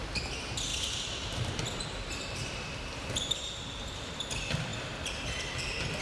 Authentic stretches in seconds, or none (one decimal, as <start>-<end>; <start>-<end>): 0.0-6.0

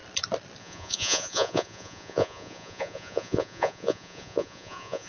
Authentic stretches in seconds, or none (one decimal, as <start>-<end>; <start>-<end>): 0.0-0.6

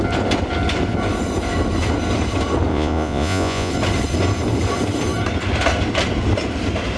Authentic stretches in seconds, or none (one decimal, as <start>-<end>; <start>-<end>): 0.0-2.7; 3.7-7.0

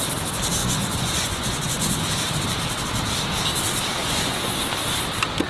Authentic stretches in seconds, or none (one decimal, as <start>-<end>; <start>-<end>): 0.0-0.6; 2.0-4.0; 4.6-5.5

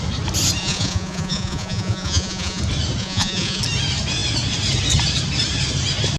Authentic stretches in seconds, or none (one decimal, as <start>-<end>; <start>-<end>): 0.0-0.6; 2.6-3.0; 3.6-6.2

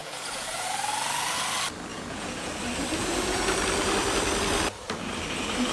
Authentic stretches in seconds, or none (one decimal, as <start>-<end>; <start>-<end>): 0.7-1.9; 2.5-3.0; 3.5-5.7

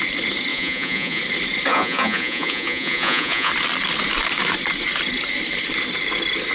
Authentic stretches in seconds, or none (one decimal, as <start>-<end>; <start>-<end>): 0.0-0.5; 1.2-1.7; 3.5-6.5